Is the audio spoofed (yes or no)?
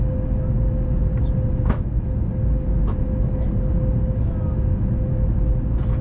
no